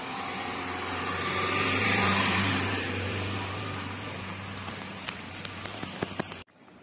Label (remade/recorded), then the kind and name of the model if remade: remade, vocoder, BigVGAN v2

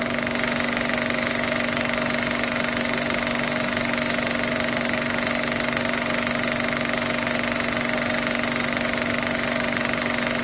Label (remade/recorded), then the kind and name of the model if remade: recorded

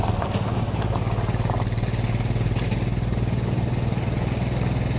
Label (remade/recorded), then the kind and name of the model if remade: recorded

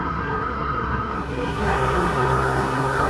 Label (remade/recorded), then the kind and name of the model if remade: remade, codec, SNAC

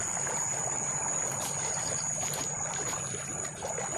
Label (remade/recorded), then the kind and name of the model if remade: recorded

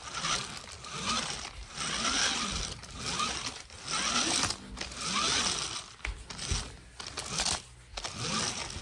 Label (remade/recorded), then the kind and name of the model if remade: recorded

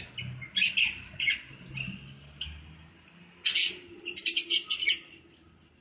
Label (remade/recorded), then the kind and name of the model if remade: recorded